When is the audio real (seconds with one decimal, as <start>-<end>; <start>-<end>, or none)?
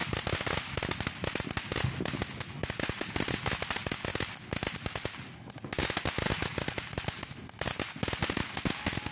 2.2-9.1